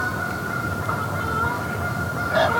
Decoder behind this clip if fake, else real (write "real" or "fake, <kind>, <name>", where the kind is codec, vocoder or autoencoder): real